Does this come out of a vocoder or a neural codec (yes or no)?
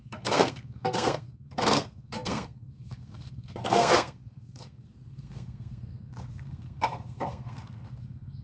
yes